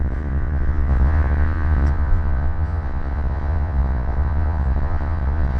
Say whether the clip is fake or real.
fake